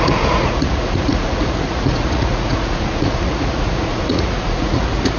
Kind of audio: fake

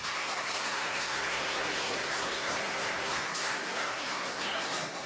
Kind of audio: fake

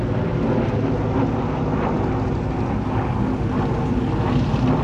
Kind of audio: real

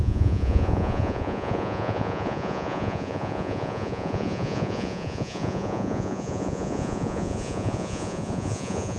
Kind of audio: fake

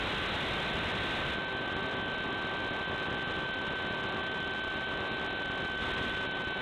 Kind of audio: real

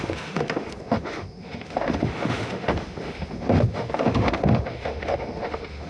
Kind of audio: fake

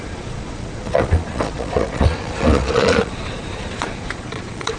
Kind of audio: fake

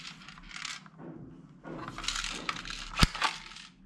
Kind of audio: real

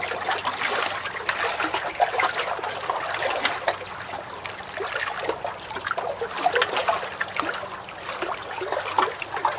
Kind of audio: real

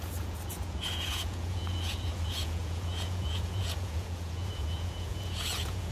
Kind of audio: fake